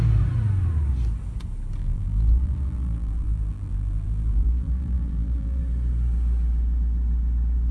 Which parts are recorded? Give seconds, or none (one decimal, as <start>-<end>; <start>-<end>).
0.0-1.8; 5.6-7.7